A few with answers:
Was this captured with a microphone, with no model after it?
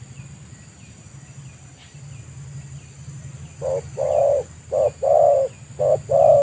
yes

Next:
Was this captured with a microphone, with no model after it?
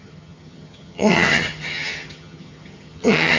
no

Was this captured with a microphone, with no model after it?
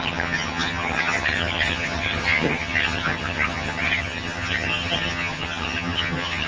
no